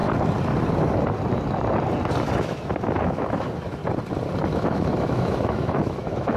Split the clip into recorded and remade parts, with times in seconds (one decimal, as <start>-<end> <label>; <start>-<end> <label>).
0.0-2.4 recorded; 2.4-3.8 remade; 3.8-4.5 recorded; 4.5-6.4 remade